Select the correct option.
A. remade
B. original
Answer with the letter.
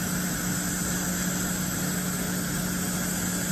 B